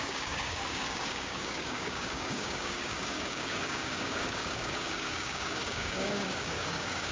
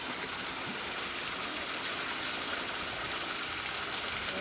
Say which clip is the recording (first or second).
second